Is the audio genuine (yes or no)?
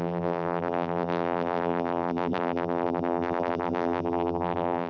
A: no